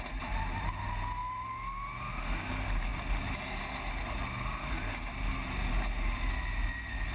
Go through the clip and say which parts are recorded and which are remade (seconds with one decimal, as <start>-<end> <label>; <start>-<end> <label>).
0.0-7.1 recorded